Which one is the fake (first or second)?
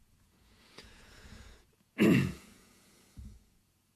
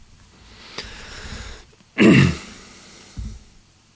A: first